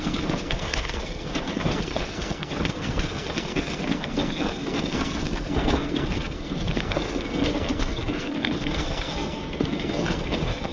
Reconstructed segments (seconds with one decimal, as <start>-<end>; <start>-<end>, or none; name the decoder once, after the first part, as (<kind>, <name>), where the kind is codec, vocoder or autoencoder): 0.0-10.7 (codec, SNAC)